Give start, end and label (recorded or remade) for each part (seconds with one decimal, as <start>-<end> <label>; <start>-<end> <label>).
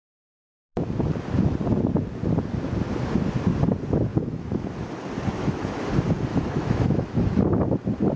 0.0-4.1 recorded; 4.1-4.7 remade; 4.7-5.3 recorded; 5.3-5.8 remade; 5.8-6.3 recorded; 6.3-7.4 remade; 7.4-8.2 recorded